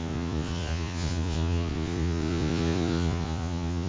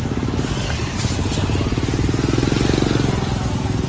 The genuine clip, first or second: second